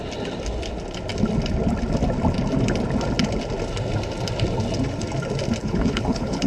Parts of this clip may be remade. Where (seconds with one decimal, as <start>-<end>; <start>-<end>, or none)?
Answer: 5.6-6.5